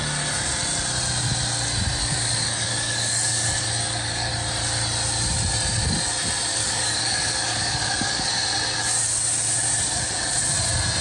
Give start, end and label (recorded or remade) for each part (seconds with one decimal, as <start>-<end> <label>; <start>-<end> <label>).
0.0-2.0 recorded; 2.0-4.3 remade; 4.3-6.5 recorded; 6.5-8.3 remade; 8.3-11.0 recorded